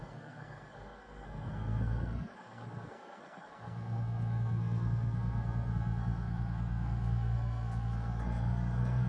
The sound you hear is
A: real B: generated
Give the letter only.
B